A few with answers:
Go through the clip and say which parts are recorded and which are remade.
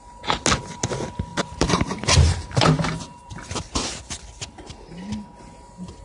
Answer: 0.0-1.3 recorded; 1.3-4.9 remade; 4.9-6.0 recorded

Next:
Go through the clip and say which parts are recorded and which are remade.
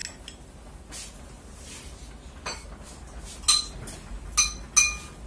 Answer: 0.0-5.3 recorded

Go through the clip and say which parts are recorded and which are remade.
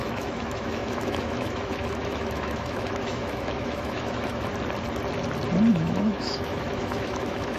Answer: 0.0-4.5 remade; 4.5-5.7 recorded; 5.7-7.6 remade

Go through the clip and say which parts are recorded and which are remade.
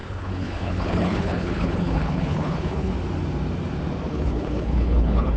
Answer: 0.0-2.9 remade; 2.9-4.1 recorded; 4.1-5.4 remade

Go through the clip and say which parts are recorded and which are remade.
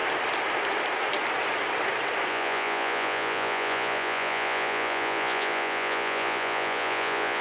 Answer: 0.0-2.3 recorded; 2.3-7.4 remade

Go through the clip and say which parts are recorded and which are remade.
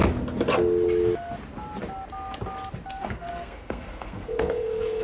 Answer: 0.0-3.0 recorded; 3.0-5.0 remade